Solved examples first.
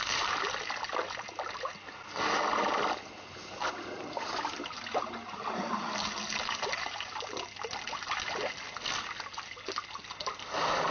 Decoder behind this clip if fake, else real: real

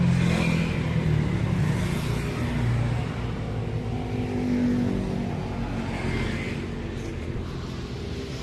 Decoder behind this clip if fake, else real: real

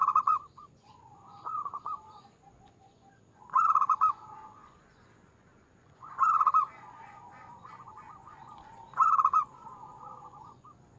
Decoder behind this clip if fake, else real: fake, vocoder, Vocos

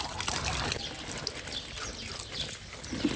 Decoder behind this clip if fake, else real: real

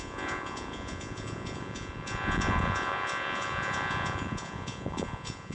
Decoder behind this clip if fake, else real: fake, vocoder, Vocos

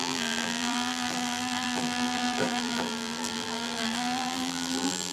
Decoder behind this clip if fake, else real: fake, vocoder, BigVGAN v2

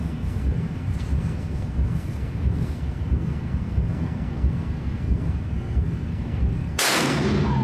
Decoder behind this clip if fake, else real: fake, codec, SNAC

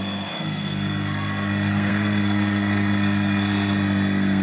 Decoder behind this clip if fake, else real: fake, codec, SNAC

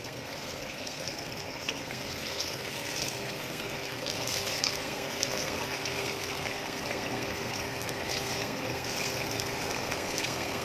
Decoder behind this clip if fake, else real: fake, codec, SNAC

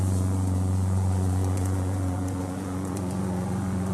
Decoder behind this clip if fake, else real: fake, vocoder, Vocos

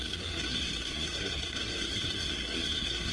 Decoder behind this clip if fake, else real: fake, codec, SNAC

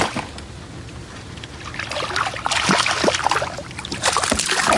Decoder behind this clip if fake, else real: real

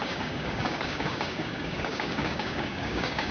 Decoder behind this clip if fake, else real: fake, codec, DAC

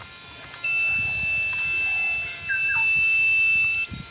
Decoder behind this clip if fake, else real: real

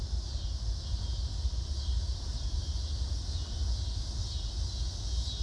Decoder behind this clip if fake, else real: real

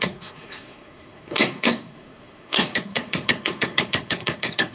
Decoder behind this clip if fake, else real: fake, codec, SNAC